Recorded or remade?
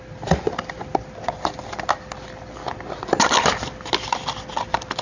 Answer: recorded